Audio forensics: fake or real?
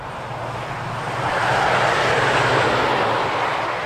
real